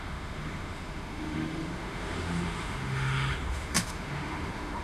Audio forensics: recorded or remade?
remade